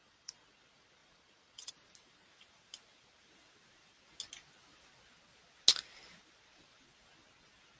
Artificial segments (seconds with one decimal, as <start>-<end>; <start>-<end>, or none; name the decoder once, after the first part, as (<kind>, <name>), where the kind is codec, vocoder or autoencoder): 0.0-0.5 (vocoder, Vocos); 1.0-1.7